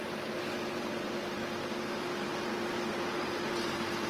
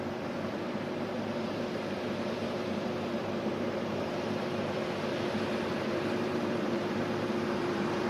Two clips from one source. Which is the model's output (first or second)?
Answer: second